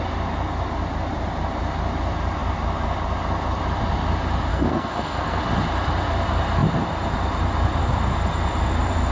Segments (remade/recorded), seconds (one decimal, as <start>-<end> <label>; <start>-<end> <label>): 0.0-4.5 recorded; 4.5-5.4 remade; 5.4-9.1 recorded